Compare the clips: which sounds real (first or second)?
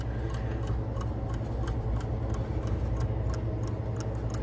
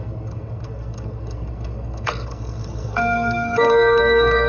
first